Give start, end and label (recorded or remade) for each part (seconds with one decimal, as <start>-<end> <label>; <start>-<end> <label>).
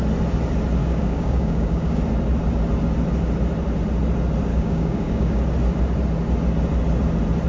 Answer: 0.0-0.8 recorded; 0.8-2.0 remade; 2.0-4.5 recorded; 4.5-5.4 remade; 5.4-7.5 recorded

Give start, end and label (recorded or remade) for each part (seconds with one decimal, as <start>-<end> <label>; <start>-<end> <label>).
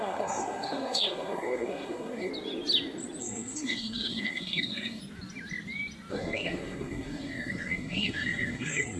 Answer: 0.0-2.3 remade; 2.3-3.2 recorded; 3.2-5.0 remade; 5.0-6.1 recorded; 6.1-9.0 remade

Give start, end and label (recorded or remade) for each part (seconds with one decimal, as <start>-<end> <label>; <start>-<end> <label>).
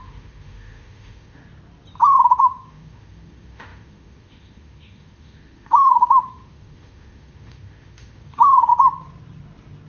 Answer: 0.0-1.4 remade; 1.4-2.4 recorded; 2.4-8.7 remade; 8.7-9.9 recorded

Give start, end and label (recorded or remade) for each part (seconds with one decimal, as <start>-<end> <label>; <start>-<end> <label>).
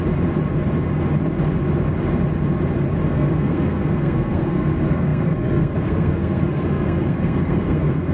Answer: 0.0-3.1 recorded; 3.1-8.1 remade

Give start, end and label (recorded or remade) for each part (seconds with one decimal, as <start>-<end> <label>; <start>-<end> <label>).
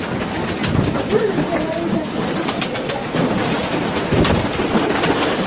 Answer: 0.0-3.4 recorded; 3.4-4.2 remade; 4.2-5.5 recorded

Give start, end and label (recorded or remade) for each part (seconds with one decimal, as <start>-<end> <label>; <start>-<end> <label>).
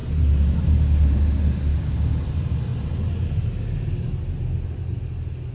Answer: 0.0-1.7 recorded; 1.7-2.2 remade; 2.2-5.5 recorded